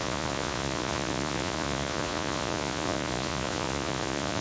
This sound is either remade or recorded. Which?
remade